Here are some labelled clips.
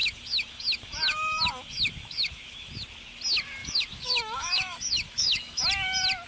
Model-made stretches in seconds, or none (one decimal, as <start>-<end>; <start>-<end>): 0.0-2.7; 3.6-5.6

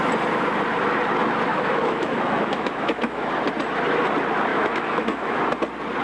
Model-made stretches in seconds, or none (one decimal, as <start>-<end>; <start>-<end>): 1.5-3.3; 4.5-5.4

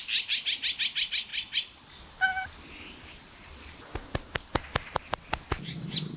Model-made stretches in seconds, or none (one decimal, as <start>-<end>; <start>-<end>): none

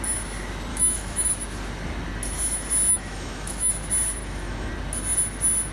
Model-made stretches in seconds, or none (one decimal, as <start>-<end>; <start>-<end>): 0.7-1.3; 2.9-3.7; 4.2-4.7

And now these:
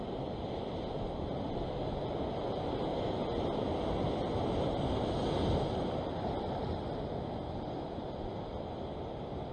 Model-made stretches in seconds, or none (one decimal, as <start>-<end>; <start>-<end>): none

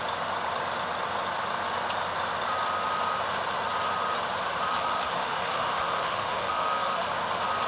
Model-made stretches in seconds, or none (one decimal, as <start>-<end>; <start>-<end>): 4.7-7.0

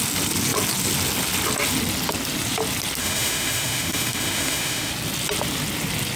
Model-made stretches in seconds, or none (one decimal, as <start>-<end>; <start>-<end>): 3.0-4.9